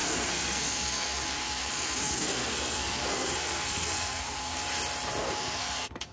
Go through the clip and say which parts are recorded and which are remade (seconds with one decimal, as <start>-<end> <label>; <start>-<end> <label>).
0.0-4.6 remade; 4.6-5.2 recorded; 5.2-6.1 remade